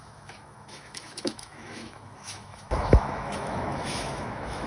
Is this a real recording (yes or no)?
no